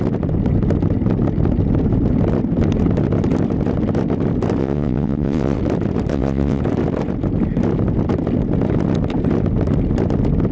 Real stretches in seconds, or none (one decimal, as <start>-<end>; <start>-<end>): 0.0-4.6; 5.6-6.1; 6.6-10.5